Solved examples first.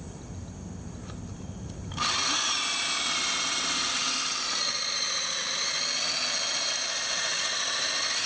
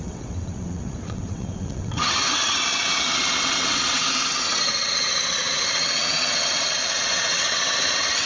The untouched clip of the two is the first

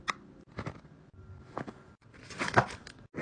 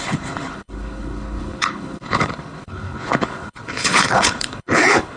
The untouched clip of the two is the first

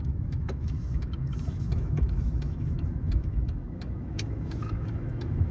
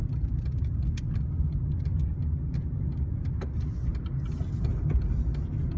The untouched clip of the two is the second